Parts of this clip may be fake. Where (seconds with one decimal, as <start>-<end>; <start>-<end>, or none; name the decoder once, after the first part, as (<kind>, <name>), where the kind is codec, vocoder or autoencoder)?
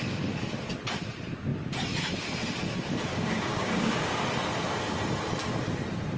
3.1-4.2 (codec, DAC)